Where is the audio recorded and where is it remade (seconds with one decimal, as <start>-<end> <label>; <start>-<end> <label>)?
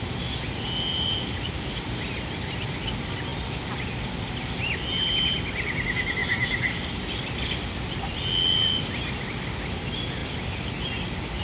0.0-11.4 recorded